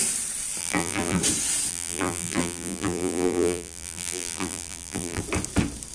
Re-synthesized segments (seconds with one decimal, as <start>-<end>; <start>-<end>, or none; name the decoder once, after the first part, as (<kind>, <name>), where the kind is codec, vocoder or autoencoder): 0.6-1.2 (vocoder, BigVGAN v2); 1.7-5.2